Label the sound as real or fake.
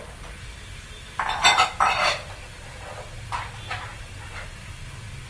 real